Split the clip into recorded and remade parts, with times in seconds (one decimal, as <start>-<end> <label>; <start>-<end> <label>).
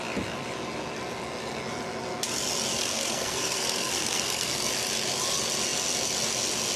0.0-2.8 recorded; 2.8-4.7 remade; 4.7-6.8 recorded